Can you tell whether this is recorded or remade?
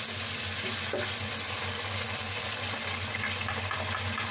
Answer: recorded